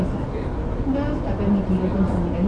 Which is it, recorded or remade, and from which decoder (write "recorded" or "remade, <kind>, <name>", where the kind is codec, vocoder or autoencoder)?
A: recorded